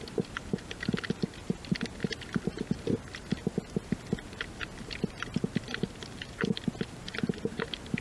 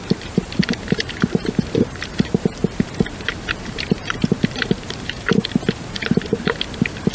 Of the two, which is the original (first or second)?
first